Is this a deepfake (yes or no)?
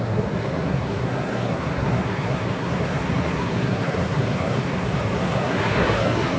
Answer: yes